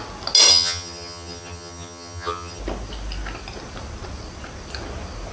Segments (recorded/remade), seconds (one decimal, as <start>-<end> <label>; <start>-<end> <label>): 0.0-0.5 recorded; 0.5-2.6 remade; 2.6-5.3 recorded